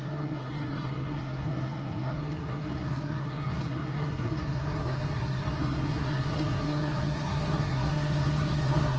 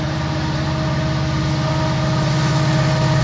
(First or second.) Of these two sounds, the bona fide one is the second